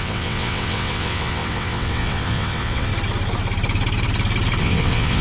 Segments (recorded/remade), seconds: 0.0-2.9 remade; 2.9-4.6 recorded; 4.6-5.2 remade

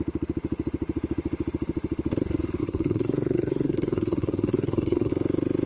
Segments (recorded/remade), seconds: 0.0-2.6 recorded; 2.6-5.1 remade; 5.1-5.7 recorded